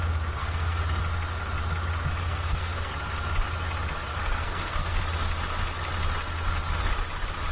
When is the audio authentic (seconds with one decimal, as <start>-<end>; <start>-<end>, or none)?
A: 0.0-0.4; 1.0-2.2; 2.9-4.1; 5.0-7.5